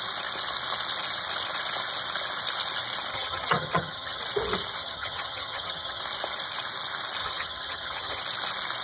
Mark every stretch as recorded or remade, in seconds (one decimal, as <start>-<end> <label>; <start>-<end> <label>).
0.0-3.1 recorded; 3.1-4.2 remade; 4.2-4.8 recorded; 4.8-6.0 remade; 6.0-7.2 recorded; 7.2-8.2 remade; 8.2-8.8 recorded